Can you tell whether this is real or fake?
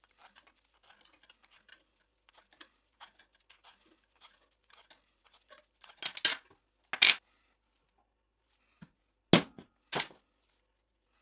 real